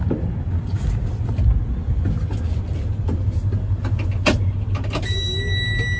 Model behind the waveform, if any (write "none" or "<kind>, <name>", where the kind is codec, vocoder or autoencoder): none